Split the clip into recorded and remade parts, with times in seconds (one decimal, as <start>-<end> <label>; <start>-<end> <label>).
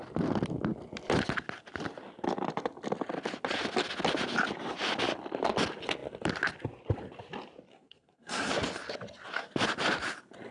0.0-7.7 recorded; 7.7-8.5 remade; 8.5-10.5 recorded